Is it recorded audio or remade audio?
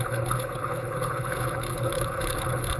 remade